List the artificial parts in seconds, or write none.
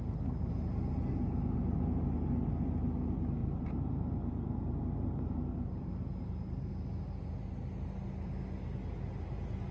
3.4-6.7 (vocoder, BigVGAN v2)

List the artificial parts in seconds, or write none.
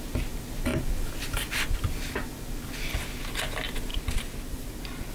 3.9-5.1 (vocoder, BigVGAN v2)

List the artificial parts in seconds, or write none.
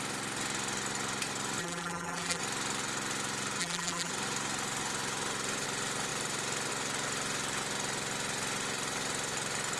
1.6-2.4 (vocoder, BigVGAN v2); 3.6-4.1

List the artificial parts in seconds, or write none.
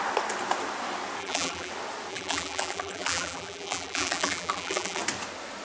1.2-1.7 (vocoder, BigVGAN v2); 2.1-5.0